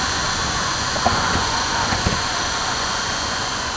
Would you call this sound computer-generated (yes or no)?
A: yes